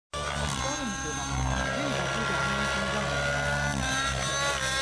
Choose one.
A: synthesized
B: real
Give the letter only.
B